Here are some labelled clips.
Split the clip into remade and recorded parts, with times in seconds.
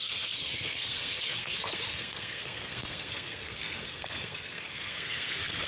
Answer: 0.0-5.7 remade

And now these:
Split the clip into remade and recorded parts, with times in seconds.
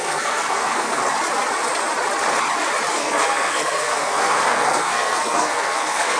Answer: 0.0-1.0 remade; 1.0-2.9 recorded; 2.9-6.2 remade